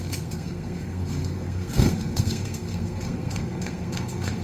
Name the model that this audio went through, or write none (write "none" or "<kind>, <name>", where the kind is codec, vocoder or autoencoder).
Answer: codec, SNAC